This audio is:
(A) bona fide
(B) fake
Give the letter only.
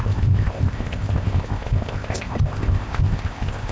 B